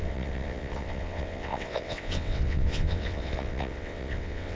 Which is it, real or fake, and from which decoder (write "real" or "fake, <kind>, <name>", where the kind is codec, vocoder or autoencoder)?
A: fake, vocoder, WaveNeXt